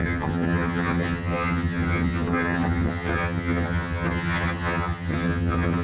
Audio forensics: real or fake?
fake